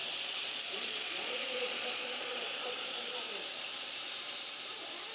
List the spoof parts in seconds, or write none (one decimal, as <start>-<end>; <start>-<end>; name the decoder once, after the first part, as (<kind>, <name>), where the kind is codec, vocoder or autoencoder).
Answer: 0.0-3.1 (vocoder, Vocos)

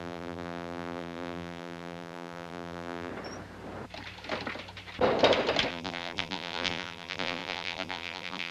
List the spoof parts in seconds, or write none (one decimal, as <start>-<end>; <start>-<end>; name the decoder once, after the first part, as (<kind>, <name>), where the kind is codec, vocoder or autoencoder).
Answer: 0.0-3.1 (vocoder, BigVGAN v2); 5.7-8.5

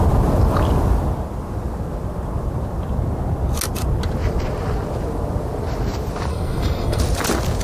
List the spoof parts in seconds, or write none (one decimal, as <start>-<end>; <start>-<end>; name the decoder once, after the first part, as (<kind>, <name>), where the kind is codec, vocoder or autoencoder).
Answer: 6.3-7.0 (codec, SNAC)

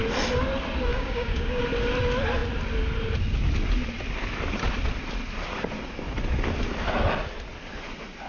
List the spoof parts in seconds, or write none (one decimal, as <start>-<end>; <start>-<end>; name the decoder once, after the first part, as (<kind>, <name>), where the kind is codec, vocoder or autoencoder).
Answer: 0.9-1.6 (codec, DAC)

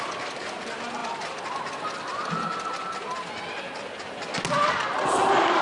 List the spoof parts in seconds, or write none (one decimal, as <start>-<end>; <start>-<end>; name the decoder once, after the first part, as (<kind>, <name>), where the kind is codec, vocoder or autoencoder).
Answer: none

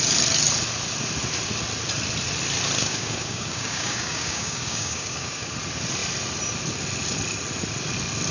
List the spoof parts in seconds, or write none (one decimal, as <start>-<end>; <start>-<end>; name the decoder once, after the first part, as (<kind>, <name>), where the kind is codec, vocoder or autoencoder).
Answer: 2.8-5.5 (codec, DAC)